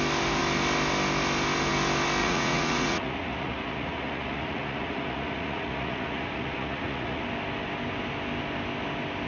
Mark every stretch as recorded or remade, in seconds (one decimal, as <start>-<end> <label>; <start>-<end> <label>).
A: 0.0-2.2 recorded; 2.2-7.2 remade; 7.2-9.3 recorded